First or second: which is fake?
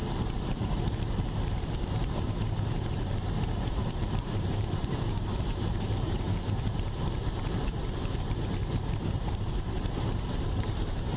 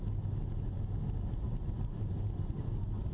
first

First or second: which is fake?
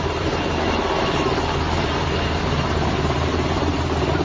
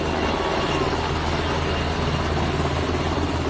first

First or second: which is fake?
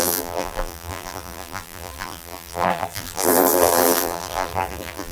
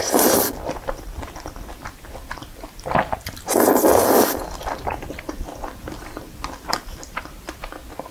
first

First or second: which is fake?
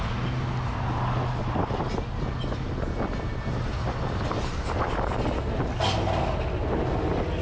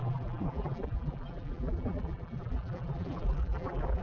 second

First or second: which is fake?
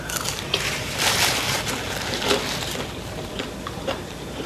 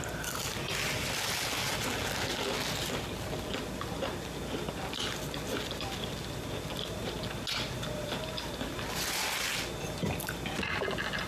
first